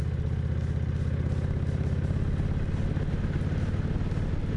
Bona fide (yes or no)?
yes